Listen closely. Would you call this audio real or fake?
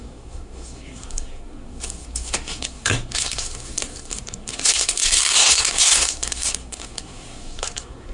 fake